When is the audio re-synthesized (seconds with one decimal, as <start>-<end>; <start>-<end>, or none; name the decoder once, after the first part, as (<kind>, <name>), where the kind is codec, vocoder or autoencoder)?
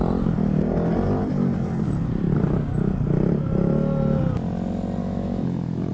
5.0-5.9 (autoencoder, DAC-VAE)